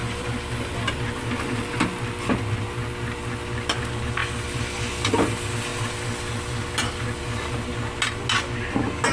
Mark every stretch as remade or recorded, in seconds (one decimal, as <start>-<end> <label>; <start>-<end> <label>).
0.0-9.1 recorded